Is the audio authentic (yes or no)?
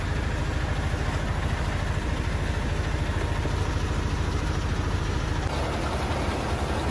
yes